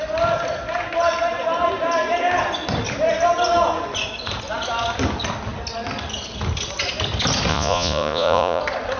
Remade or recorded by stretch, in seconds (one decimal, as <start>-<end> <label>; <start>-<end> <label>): 0.0-7.5 recorded; 7.5-8.6 remade; 8.6-9.0 recorded